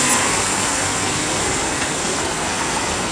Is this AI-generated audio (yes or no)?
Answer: yes